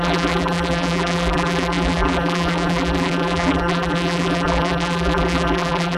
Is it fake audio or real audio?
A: fake